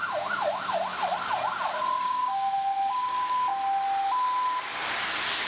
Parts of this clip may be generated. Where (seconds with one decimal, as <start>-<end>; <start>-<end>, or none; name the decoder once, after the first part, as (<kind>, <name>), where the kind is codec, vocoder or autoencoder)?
2.0-3.5 (codec, DAC)